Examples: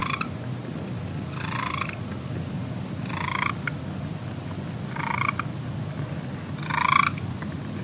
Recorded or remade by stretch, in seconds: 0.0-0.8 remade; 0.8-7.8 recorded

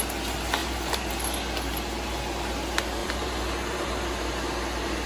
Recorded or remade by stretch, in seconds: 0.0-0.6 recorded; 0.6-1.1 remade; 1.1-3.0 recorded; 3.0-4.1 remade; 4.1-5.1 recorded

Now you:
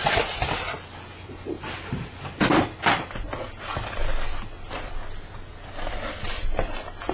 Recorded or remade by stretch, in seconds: 0.0-7.1 recorded

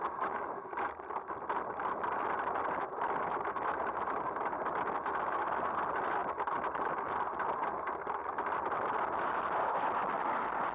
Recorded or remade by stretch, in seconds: 0.0-10.7 recorded

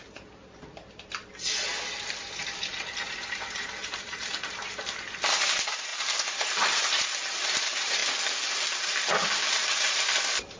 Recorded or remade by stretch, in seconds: 0.0-8.0 remade; 8.0-9.5 recorded; 9.5-10.6 remade

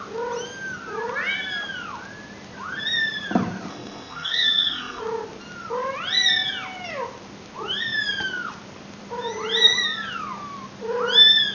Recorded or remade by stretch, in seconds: 0.0-3.7 recorded; 3.7-5.0 remade; 5.0-11.5 recorded

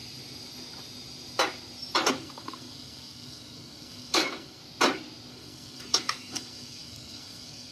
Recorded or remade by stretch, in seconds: 0.0-2.1 recorded; 2.1-4.6 remade; 4.6-5.3 recorded; 5.3-7.7 remade